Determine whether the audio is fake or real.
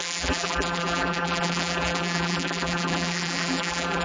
fake